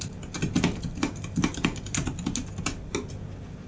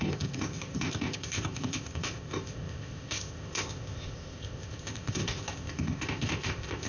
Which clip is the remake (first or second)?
second